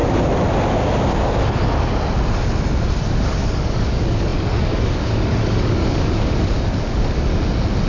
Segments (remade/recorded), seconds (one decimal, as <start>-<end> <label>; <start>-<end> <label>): 0.0-3.3 recorded; 3.3-7.3 remade; 7.3-7.9 recorded